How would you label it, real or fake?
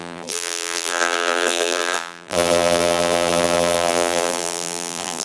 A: fake